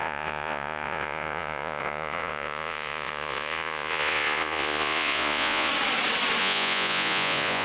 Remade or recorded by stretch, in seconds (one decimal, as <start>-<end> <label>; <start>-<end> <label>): 0.0-5.7 remade; 5.7-6.4 recorded; 6.4-7.6 remade